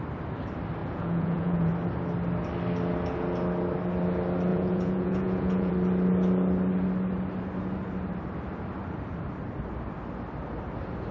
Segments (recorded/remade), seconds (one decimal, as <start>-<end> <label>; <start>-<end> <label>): 0.0-0.8 recorded; 0.8-1.7 remade; 1.7-4.5 recorded; 4.5-5.7 remade; 5.7-11.1 recorded